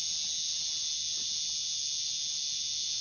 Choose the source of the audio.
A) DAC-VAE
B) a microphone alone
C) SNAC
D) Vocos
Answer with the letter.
B